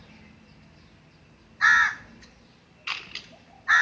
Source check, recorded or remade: recorded